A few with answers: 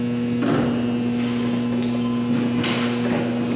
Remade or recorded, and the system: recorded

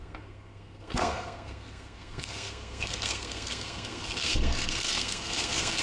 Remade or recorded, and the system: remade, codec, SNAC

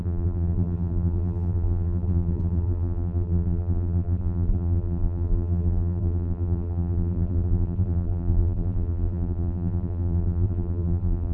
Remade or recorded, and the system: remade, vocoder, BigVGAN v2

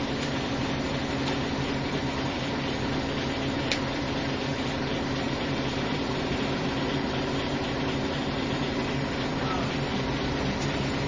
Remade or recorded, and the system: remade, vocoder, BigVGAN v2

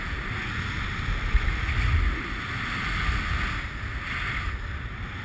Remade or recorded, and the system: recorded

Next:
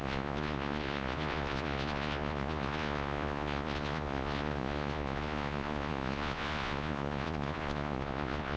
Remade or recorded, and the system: remade, vocoder, Vocos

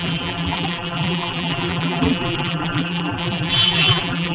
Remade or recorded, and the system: remade, vocoder, BigVGAN v2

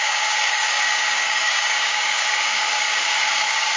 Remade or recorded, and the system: remade, codec, DAC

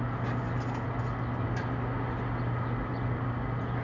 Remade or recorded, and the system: recorded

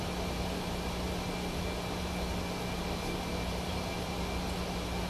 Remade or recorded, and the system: recorded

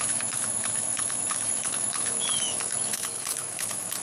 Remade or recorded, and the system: remade, autoencoder, DAC-VAE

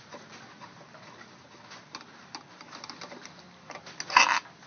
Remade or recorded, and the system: recorded